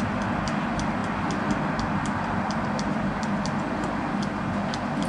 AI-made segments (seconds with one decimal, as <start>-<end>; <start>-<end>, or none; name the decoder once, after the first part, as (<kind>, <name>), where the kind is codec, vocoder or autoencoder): none